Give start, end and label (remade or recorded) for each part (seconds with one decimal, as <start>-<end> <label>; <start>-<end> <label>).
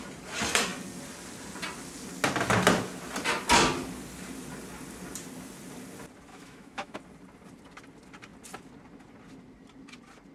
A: 0.0-6.3 recorded; 6.3-7.0 remade; 7.0-10.3 recorded